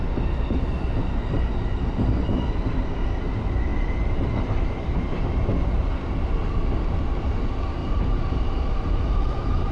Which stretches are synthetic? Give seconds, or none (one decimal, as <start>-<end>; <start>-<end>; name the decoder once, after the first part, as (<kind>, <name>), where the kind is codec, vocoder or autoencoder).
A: 7.8-9.7 (vocoder, BigVGAN v2)